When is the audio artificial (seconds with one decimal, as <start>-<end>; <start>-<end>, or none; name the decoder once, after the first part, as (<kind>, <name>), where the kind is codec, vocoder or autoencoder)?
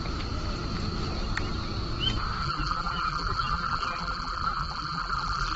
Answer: 2.4-5.6 (vocoder, BigVGAN v2)